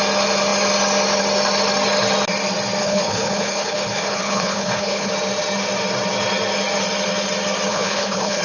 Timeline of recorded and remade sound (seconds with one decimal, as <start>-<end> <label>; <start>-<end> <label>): 0.0-2.8 recorded; 2.8-5.1 remade; 5.1-7.7 recorded; 7.7-8.4 remade